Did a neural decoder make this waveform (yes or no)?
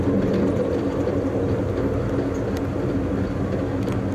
no